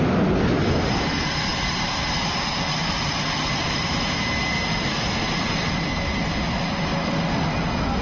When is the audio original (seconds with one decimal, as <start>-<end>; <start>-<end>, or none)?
0.0-8.0